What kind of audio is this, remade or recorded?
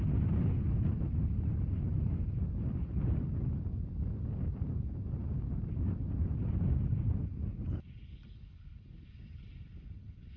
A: recorded